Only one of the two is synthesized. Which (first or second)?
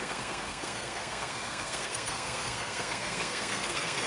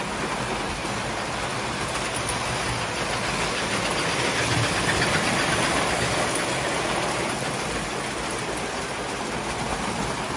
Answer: first